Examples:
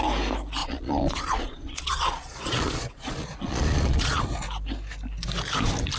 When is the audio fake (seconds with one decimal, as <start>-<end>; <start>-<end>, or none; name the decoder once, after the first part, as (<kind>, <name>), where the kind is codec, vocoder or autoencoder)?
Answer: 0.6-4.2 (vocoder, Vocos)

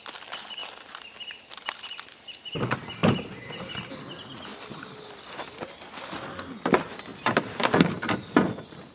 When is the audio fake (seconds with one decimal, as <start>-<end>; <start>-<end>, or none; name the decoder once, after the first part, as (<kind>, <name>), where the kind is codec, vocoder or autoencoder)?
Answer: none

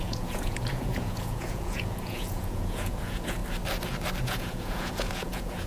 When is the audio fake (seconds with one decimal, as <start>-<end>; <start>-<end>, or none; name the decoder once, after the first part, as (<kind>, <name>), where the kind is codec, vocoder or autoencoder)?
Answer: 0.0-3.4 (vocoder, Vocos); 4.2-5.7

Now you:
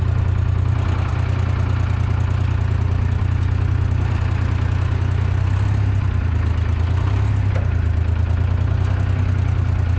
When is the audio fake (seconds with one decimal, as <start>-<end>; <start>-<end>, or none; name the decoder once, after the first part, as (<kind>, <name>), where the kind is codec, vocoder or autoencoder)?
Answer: none

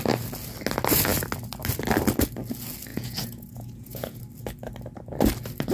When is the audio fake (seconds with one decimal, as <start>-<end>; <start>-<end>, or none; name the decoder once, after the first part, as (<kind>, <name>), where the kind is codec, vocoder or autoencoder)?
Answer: 2.9-4.2 (vocoder, Vocos)

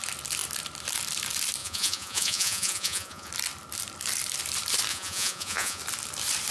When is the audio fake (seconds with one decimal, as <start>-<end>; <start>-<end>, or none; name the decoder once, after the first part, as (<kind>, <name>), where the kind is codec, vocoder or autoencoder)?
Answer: 1.6-3.3 (vocoder, Vocos); 4.9-5.8

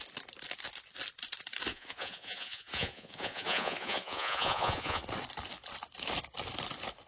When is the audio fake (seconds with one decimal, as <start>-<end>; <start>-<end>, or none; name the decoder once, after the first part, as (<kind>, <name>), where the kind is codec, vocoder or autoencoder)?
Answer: 1.7-5.0 (vocoder, Vocos)

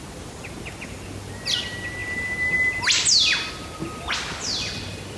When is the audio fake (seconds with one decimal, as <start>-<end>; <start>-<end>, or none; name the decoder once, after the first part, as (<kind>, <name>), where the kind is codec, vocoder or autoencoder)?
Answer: none